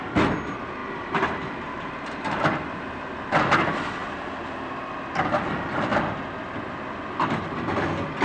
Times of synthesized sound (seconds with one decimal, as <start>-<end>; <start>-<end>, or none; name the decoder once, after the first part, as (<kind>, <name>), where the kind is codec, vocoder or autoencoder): 0.8-2.3 (vocoder, BigVGAN v2)